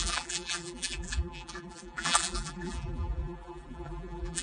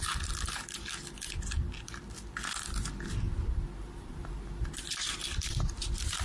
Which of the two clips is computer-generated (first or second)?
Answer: first